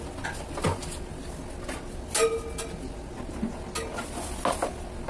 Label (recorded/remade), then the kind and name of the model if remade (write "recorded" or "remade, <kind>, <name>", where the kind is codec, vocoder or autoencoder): recorded